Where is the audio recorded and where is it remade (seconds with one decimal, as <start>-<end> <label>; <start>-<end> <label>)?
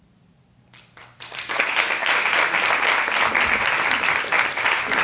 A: 0.0-1.0 recorded; 1.0-1.6 remade; 1.6-2.0 recorded; 2.0-4.2 remade; 4.2-5.0 recorded